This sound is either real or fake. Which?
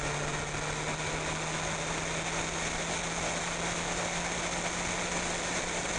real